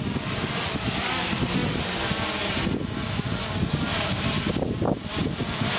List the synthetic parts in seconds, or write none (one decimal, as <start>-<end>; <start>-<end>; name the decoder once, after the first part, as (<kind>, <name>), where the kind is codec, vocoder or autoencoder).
none